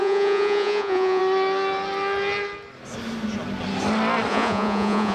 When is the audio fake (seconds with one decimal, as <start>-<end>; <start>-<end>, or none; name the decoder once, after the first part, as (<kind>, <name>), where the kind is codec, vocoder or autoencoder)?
0.0-1.2 (vocoder, Vocos); 4.3-5.1